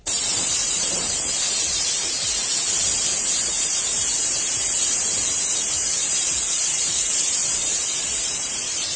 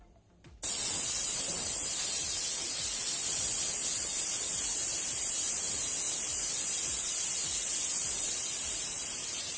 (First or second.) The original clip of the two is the second